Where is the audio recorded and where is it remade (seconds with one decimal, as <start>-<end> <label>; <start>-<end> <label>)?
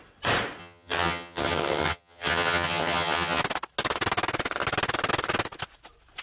0.0-0.6 recorded; 0.6-3.4 remade; 3.4-6.2 recorded